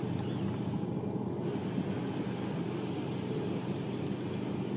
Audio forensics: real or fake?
real